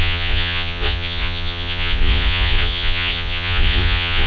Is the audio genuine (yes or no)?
no